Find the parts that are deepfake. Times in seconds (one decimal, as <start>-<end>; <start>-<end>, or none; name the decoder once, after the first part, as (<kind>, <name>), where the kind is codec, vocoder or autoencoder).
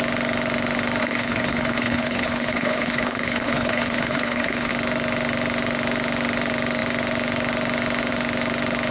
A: 1.0-4.7 (codec, HILCodec)